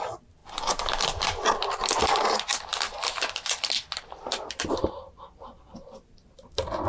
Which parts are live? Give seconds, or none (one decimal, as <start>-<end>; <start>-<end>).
0.0-6.9